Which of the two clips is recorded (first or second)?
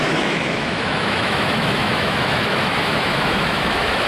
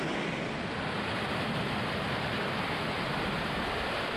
second